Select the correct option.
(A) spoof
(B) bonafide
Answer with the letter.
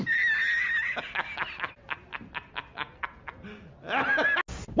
B